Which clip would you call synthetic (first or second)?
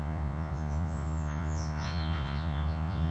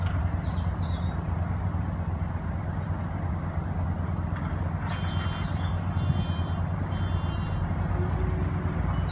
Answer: first